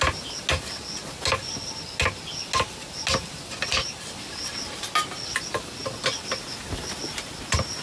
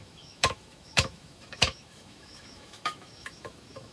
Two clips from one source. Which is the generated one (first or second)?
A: second